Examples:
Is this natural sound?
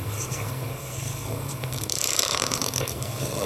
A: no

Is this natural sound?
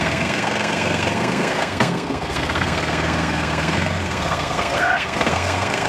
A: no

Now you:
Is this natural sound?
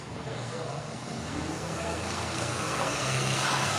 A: no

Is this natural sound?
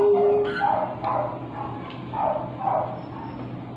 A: yes